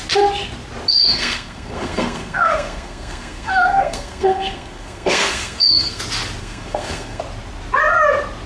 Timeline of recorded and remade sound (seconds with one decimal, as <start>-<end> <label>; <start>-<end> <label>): 0.0-0.9 recorded; 0.9-6.0 remade; 6.0-6.4 recorded; 6.4-7.2 remade; 7.2-8.5 recorded